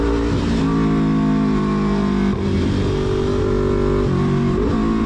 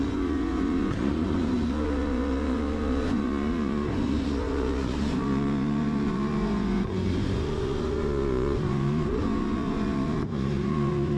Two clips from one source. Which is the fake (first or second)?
second